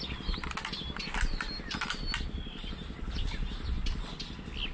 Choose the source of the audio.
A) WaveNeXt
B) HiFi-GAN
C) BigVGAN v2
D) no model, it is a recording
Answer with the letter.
D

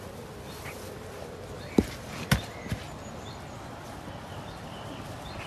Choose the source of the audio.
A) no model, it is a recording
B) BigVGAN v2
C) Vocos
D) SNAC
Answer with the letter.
A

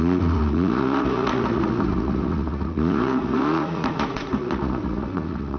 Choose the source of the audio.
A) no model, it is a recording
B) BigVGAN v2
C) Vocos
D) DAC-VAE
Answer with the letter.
C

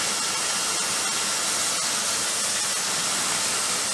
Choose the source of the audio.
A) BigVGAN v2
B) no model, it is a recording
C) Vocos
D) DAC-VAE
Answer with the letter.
B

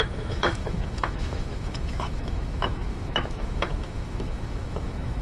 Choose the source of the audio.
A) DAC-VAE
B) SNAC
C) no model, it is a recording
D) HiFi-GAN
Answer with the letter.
A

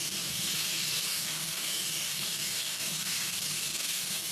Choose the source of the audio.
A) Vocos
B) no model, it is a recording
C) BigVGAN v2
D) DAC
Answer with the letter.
D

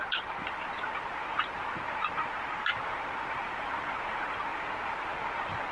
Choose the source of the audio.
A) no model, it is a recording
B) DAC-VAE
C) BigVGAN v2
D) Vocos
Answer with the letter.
A